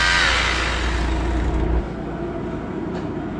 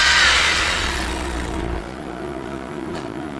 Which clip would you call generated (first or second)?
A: second